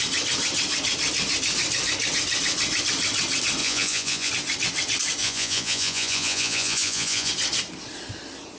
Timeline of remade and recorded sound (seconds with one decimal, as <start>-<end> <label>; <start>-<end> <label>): 0.0-3.6 recorded; 3.6-4.3 remade; 4.3-5.2 recorded; 5.2-7.3 remade; 7.3-8.6 recorded